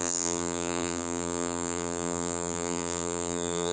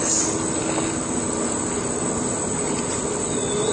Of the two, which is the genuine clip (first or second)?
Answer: second